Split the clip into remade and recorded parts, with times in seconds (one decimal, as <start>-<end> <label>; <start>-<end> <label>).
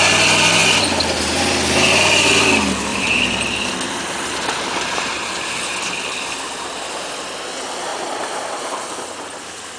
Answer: 0.0-2.9 recorded; 2.9-6.7 remade; 6.7-7.9 recorded; 7.9-9.8 remade